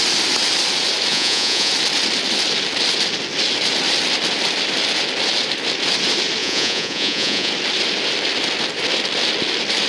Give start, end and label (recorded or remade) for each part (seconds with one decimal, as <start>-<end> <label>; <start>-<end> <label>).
0.0-1.1 recorded; 1.1-1.7 remade; 1.7-6.4 recorded; 6.4-7.5 remade; 7.5-9.9 recorded